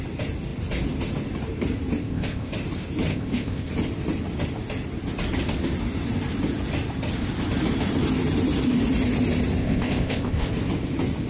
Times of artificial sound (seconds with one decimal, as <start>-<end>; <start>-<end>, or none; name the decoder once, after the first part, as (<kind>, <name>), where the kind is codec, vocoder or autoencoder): 2.0-2.5 (codec, ZipCodec); 3.1-3.7; 9.6-10.5